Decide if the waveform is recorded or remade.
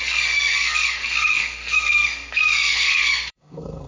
remade